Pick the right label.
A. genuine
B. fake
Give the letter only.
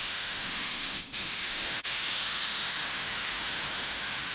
B